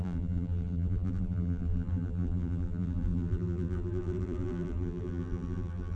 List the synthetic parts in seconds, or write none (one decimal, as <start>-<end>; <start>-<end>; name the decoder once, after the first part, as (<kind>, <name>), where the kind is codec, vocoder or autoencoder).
0.0-6.0 (vocoder, BigVGAN v2)